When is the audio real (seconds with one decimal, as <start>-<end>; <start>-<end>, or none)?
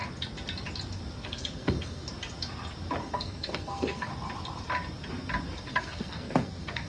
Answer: 0.0-1.2; 2.1-3.0; 4.1-5.7